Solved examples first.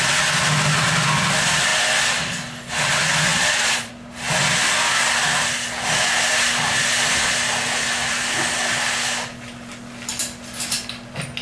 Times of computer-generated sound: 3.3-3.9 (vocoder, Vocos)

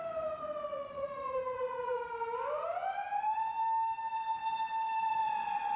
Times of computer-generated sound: 0.7-2.0 (vocoder, Vocos)